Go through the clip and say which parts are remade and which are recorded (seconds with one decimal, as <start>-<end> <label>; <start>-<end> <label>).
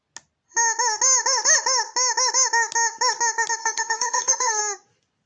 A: 0.0-3.6 recorded; 3.6-4.6 remade; 4.6-5.3 recorded